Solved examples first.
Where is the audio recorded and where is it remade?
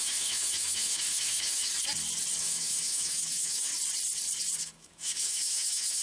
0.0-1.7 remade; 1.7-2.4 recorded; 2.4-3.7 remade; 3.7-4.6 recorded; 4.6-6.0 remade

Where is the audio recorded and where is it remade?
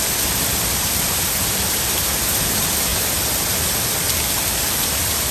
0.0-2.9 remade; 2.9-4.7 recorded; 4.7-5.3 remade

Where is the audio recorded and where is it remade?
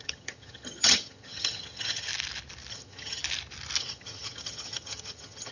0.0-2.1 remade; 2.1-2.7 recorded; 2.7-3.2 remade; 3.2-3.8 recorded; 3.8-5.5 remade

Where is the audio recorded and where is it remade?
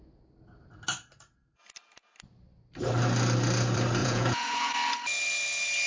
0.0-4.0 recorded; 4.0-4.7 remade; 4.7-5.9 recorded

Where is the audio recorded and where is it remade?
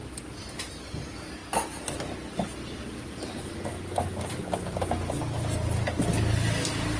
0.0-7.0 recorded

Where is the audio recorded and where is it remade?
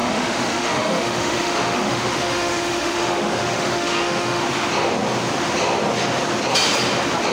0.0-4.4 remade; 4.4-7.3 recorded